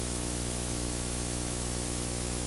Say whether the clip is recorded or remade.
remade